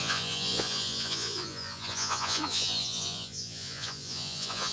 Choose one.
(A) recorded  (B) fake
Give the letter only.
B